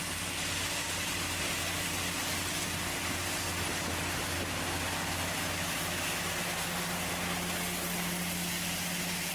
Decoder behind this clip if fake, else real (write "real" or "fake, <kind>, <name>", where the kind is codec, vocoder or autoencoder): real